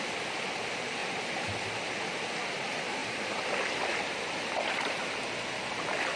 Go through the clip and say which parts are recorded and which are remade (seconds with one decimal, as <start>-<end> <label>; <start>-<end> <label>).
0.0-6.2 recorded